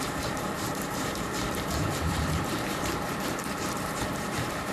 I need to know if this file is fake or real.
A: fake